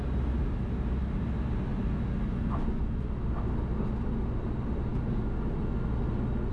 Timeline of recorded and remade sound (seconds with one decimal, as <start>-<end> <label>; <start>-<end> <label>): 0.0-6.5 recorded